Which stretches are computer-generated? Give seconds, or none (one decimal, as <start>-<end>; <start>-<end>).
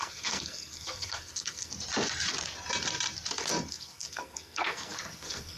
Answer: 0.0-1.7; 3.7-5.6